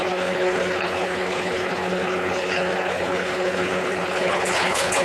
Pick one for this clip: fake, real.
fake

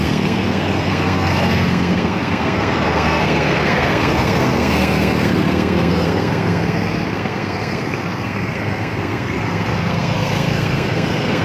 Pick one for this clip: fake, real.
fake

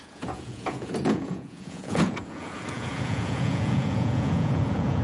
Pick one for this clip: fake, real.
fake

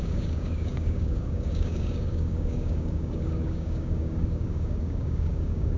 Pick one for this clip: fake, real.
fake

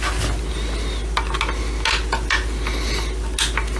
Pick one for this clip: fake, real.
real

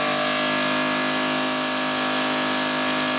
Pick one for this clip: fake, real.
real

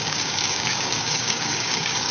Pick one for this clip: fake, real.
fake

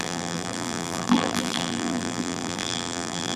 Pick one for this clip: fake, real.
fake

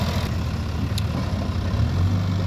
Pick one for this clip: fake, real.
real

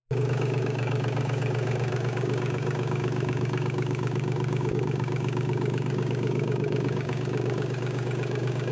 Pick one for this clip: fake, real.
fake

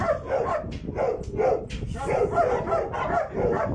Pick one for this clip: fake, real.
real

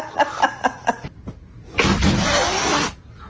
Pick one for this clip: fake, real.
real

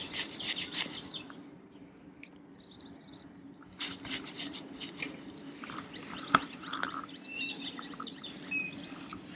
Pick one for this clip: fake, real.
real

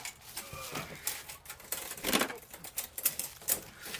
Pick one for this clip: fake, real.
real